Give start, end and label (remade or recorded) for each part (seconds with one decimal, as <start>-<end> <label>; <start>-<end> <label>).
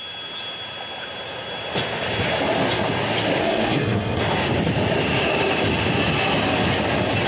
0.0-3.4 recorded; 3.4-4.2 remade; 4.2-7.3 recorded